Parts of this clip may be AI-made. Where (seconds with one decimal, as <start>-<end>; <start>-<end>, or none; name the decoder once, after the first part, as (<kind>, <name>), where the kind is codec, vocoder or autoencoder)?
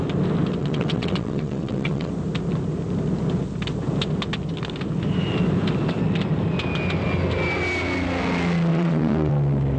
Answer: 0.6-2.1 (vocoder, WaveNeXt); 8.7-9.3